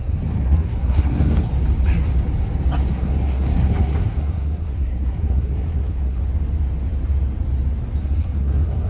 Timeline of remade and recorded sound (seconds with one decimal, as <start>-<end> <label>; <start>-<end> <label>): 0.0-1.5 remade; 1.5-2.9 recorded; 2.9-6.2 remade; 6.2-8.0 recorded; 8.0-8.9 remade